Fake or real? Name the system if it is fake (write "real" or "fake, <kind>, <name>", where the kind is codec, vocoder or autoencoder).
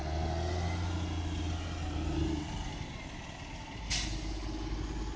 real